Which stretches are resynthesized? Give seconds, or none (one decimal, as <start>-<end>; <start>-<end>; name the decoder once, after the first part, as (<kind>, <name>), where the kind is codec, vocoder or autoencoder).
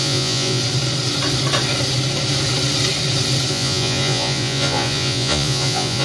0.0-0.6 (vocoder, Vocos); 3.5-6.0